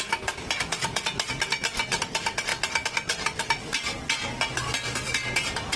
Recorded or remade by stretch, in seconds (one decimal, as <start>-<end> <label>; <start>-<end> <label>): 0.0-5.8 recorded